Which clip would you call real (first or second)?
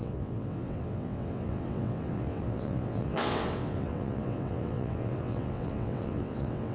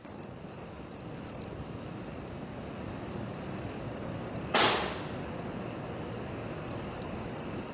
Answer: second